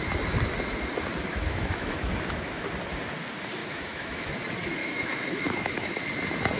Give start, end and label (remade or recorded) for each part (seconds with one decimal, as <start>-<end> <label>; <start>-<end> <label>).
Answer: 0.0-1.3 recorded; 1.3-2.1 remade; 2.1-3.6 recorded; 3.6-4.3 remade; 4.3-4.8 recorded; 4.8-5.9 remade; 5.9-6.6 recorded